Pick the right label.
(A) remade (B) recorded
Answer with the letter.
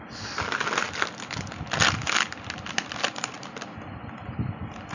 B